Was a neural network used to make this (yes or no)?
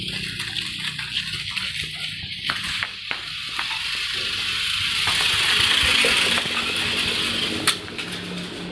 no